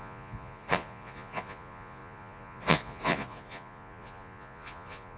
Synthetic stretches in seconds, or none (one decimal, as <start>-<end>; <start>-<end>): 0.0-5.2